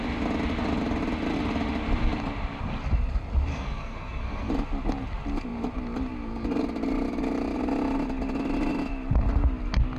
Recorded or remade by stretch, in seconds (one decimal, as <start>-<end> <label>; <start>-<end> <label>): 0.0-3.5 recorded; 3.5-4.5 remade; 4.5-10.0 recorded